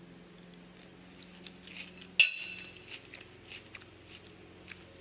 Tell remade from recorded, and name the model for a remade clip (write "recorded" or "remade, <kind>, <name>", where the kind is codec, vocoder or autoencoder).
recorded